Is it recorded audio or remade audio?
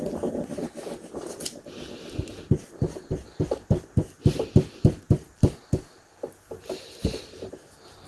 recorded